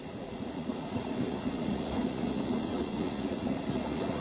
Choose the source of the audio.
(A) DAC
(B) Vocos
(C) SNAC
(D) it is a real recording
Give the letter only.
B